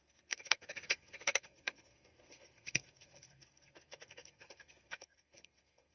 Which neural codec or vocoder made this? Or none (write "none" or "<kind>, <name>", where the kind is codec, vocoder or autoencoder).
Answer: codec, SNAC